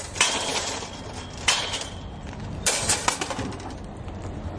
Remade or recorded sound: recorded